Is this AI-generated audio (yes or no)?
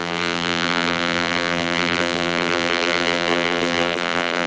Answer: yes